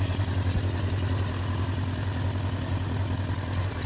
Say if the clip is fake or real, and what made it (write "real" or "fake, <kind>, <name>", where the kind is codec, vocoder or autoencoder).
real